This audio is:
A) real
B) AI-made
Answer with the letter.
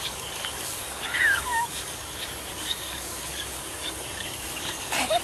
B